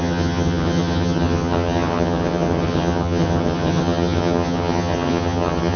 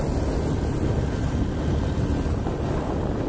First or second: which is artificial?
first